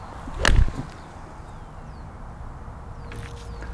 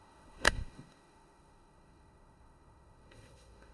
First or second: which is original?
first